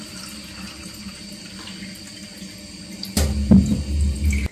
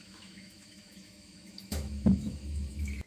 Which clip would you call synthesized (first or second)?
second